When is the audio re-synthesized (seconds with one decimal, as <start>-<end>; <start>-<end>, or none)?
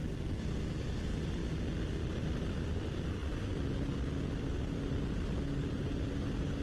0.8-1.4; 2.7-3.2; 4.4-6.6